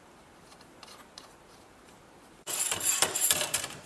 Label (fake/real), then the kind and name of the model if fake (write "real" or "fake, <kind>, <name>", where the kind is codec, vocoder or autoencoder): fake, vocoder, BigVGAN v2